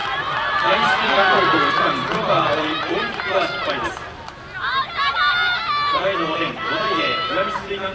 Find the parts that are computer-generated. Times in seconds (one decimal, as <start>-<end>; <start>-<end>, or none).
0.0-3.9; 6.1-7.3